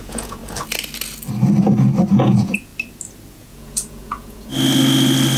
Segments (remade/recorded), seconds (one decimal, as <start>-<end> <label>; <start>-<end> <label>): 0.0-0.4 remade; 0.4-2.1 recorded; 2.1-2.7 remade; 2.7-3.3 recorded; 3.3-4.5 remade; 4.5-5.4 recorded